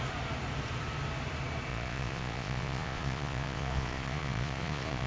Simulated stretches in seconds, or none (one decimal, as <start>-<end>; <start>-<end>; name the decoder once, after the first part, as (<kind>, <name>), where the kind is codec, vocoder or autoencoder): 1.7-5.1 (vocoder, Vocos)